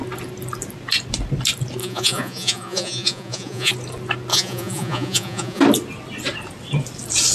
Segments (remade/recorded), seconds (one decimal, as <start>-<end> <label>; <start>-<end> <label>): 0.0-1.8 recorded; 1.8-3.7 remade; 3.7-4.3 recorded; 4.3-5.6 remade; 5.6-7.3 recorded